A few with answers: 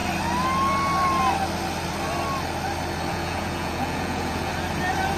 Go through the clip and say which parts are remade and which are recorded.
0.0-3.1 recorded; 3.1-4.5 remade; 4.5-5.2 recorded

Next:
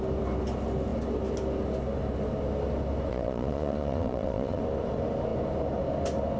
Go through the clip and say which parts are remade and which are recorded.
0.0-3.1 recorded; 3.1-4.6 remade; 4.6-6.4 recorded

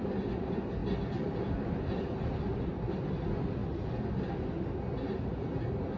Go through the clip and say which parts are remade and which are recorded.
0.0-6.0 recorded